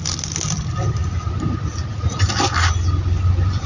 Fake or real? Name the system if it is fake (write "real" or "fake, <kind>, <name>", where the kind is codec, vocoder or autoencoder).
real